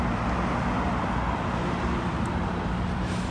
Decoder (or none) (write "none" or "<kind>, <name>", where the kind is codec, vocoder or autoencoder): none